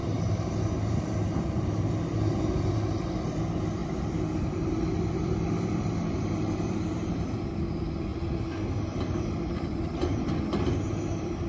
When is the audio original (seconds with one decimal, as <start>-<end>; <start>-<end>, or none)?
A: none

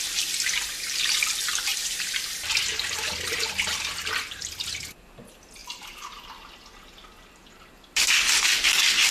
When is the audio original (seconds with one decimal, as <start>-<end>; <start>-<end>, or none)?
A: 0.0-1.7; 2.5-5.6; 6.3-9.1

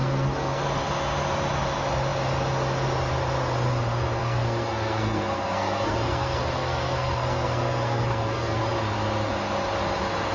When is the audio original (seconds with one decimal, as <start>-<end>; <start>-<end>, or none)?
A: 0.6-4.2; 8.6-10.3

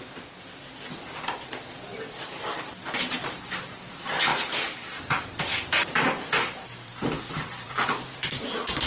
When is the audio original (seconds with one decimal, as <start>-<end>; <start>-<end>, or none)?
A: 0.0-1.9; 2.4-4.3

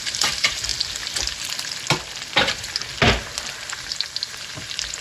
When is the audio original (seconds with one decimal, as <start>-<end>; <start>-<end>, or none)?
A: 0.7-3.7

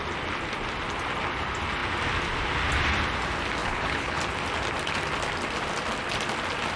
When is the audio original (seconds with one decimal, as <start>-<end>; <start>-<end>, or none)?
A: 0.0-3.6; 4.2-6.8